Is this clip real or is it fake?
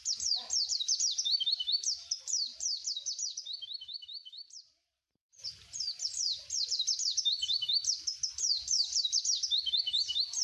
fake